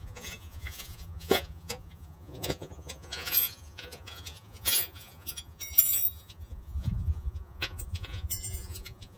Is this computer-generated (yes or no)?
yes